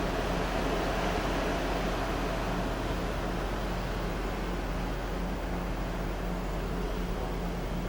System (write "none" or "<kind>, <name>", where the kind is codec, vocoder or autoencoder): none